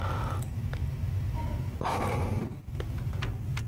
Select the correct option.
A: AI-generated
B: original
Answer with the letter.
B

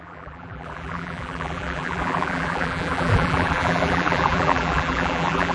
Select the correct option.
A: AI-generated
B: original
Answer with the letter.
A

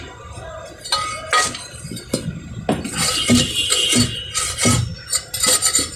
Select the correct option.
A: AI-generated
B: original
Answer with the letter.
B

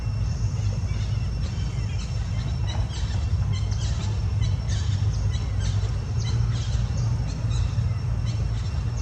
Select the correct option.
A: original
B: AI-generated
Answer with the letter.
A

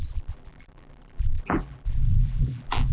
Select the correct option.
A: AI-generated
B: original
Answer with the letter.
A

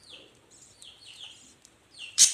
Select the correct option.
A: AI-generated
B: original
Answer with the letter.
A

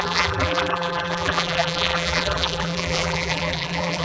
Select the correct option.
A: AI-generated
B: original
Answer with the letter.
A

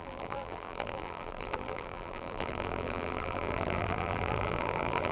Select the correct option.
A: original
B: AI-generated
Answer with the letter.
B